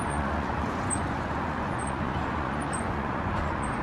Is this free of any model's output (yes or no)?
no